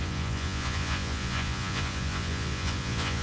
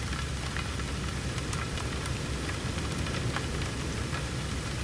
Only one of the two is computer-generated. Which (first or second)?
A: first